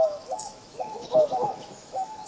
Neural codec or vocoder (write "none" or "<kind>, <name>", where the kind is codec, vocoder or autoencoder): autoencoder, DAC-VAE